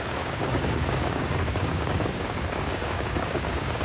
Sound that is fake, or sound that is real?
fake